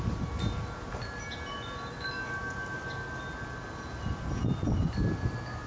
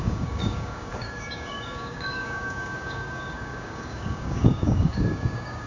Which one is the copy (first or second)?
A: second